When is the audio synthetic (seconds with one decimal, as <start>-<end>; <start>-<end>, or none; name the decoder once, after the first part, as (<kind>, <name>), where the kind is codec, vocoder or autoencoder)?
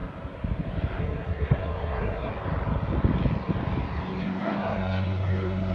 1.0-2.3 (codec, SNAC); 4.2-5.7